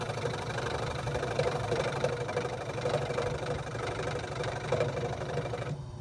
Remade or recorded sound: remade